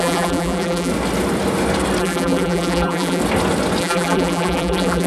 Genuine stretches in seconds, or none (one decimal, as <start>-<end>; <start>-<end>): 0.9-2.0; 3.2-3.8

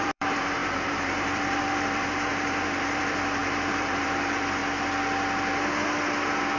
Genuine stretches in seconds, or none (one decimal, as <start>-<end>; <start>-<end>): 4.6-6.6

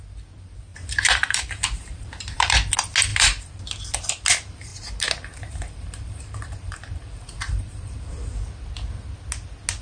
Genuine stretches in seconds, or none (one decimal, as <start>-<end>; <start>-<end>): 0.0-0.7; 2.7-3.1; 3.6-4.7; 8.1-9.8